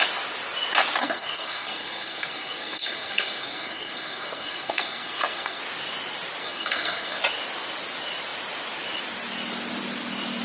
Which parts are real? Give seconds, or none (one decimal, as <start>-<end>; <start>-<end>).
0.0-1.0; 5.6-6.4; 7.2-10.4